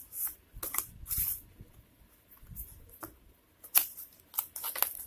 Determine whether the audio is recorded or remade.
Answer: recorded